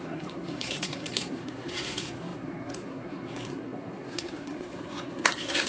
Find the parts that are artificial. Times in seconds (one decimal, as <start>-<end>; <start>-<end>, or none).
0.0-5.7